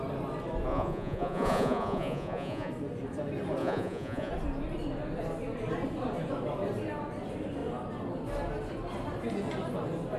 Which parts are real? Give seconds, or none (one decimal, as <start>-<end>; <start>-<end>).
0.0-0.7; 2.7-3.6; 4.3-10.2